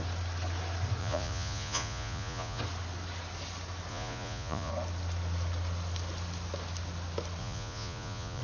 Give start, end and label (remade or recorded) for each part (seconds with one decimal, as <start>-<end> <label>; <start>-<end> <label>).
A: 0.0-1.0 recorded; 1.0-2.6 remade; 2.6-3.9 recorded; 3.9-4.7 remade; 4.7-7.4 recorded; 7.4-8.4 remade

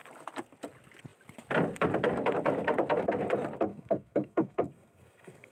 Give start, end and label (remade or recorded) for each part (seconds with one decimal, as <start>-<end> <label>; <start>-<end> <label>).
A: 0.0-3.7 recorded; 3.7-5.5 remade